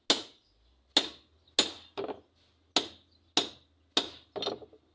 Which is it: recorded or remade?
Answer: recorded